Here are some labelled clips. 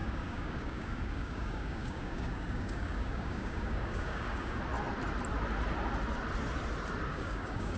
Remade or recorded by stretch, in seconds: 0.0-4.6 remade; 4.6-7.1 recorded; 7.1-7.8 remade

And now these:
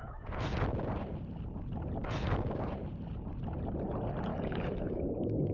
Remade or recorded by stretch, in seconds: 0.0-2.0 recorded; 2.0-2.7 remade; 2.7-4.3 recorded; 4.3-5.5 remade

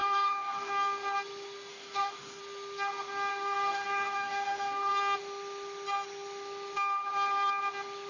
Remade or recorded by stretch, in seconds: 0.0-0.7 remade; 0.7-1.7 recorded; 1.7-2.4 remade; 2.4-3.3 recorded; 3.3-4.9 remade; 4.9-8.1 recorded

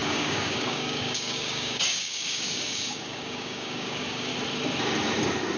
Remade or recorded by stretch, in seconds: 0.0-4.3 remade; 4.3-5.6 recorded